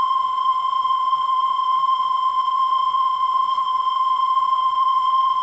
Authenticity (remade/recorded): remade